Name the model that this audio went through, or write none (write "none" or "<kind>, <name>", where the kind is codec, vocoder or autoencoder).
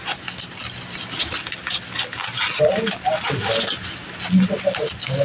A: none